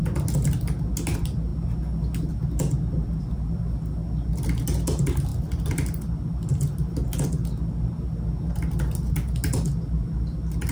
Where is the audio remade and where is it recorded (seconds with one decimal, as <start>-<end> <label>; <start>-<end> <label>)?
0.0-10.7 recorded